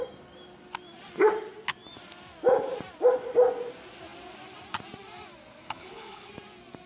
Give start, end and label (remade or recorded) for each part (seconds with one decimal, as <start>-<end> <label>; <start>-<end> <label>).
0.0-5.6 recorded; 5.6-6.3 remade; 6.3-6.9 recorded